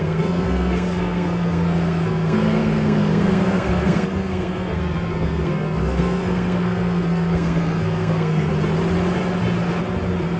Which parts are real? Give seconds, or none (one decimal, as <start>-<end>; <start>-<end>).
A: 8.5-10.4